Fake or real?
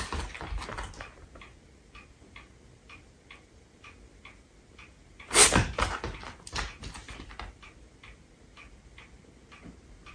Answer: real